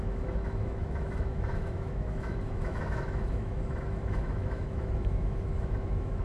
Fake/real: fake